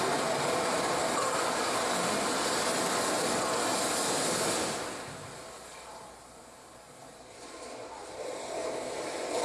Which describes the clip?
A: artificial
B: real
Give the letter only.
B